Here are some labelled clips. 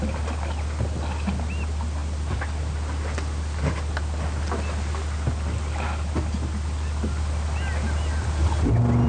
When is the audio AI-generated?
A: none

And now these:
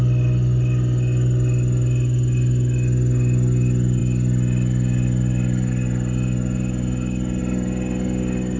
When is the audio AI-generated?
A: none